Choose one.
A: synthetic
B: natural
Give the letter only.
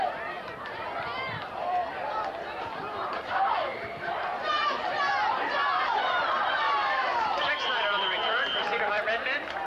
A